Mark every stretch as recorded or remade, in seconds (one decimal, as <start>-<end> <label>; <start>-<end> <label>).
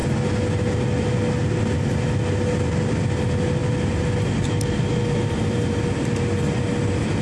0.0-7.2 recorded